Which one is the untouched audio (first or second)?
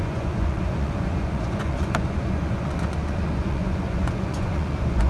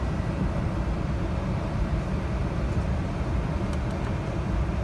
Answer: second